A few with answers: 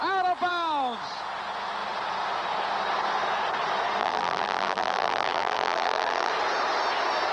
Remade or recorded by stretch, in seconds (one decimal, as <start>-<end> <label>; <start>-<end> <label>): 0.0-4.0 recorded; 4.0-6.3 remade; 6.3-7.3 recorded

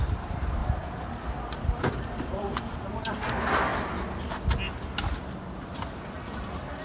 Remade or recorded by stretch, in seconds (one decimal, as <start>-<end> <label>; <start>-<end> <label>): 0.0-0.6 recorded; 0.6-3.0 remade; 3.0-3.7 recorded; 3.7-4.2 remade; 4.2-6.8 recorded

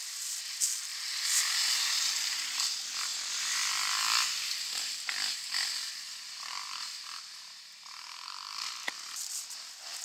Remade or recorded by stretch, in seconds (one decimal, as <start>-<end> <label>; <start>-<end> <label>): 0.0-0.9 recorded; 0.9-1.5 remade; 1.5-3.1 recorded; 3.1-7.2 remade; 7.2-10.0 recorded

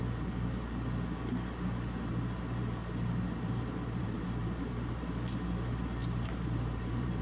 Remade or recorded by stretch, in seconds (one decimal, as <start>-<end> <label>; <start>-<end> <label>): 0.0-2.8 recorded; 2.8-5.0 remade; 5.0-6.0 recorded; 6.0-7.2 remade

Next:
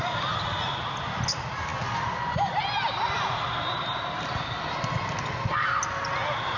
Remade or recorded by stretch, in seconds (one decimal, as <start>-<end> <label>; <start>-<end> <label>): 0.0-6.6 recorded